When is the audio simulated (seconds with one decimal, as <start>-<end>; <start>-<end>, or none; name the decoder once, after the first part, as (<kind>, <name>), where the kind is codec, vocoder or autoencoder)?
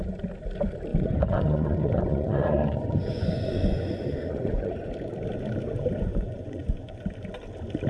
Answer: 0.9-4.9 (vocoder, Vocos); 6.1-7.0